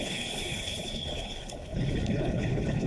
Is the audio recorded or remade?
remade